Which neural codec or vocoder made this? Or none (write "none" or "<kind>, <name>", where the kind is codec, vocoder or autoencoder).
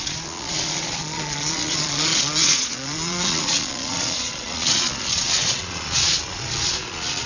vocoder, Vocos